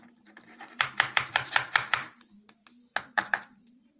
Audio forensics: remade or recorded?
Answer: remade